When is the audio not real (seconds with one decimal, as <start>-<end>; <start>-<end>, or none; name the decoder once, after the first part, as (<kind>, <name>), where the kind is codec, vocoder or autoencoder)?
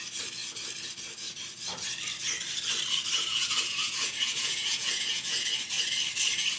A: 3.2-5.5 (vocoder, Vocos)